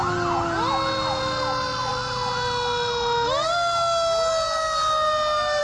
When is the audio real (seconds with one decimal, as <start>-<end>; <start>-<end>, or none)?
0.0-5.6